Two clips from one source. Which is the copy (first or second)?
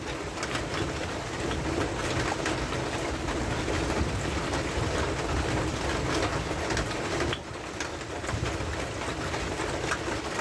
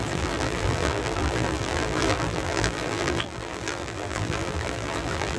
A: second